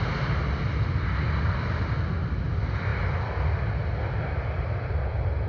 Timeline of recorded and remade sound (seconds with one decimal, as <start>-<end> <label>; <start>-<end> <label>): 0.0-5.5 recorded